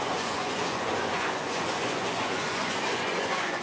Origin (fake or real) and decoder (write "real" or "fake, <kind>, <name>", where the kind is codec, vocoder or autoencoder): fake, vocoder, Vocos